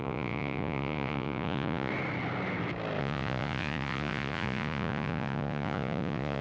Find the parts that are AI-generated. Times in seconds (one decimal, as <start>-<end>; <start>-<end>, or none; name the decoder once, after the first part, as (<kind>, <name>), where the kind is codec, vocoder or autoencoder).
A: 0.0-1.9 (vocoder, Vocos); 3.0-6.4